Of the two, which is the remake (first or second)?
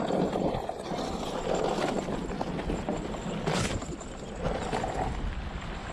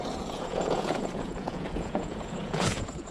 second